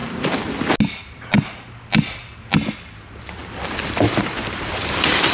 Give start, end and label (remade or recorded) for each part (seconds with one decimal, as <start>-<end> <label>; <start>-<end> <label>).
0.0-0.7 remade; 0.7-3.4 recorded; 3.4-4.3 remade; 4.3-5.3 recorded

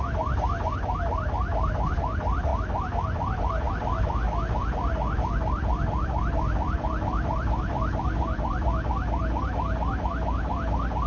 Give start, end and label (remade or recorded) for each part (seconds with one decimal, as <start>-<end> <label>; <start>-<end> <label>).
0.0-11.1 recorded